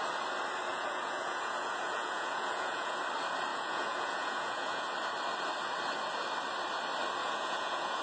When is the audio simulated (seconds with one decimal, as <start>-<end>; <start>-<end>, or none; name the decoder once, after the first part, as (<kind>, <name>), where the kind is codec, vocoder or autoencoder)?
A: 0.7-3.0 (vocoder, Vocos); 3.5-4.9; 7.2-8.0